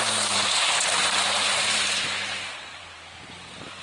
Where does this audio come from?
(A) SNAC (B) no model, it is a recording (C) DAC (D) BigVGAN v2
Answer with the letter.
D